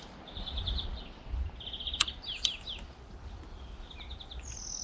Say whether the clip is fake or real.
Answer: real